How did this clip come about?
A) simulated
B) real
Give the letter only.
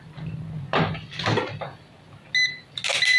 B